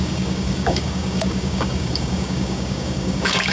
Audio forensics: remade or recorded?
remade